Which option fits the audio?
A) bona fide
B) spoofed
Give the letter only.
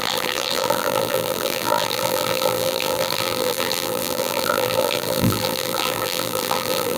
B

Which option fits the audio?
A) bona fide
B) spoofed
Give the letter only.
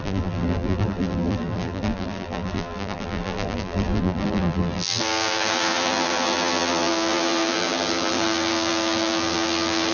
B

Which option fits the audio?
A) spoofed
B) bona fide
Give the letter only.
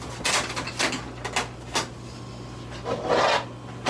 B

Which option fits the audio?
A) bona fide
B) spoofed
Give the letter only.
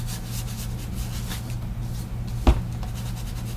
A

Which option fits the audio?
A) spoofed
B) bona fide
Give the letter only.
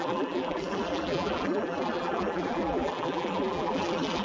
A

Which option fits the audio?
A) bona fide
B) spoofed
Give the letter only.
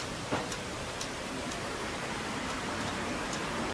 B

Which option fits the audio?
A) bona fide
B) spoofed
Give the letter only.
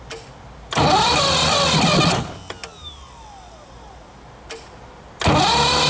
A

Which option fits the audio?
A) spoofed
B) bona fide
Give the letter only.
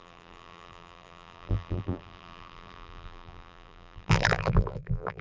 A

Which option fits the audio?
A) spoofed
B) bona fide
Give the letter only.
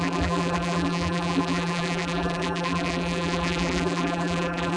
A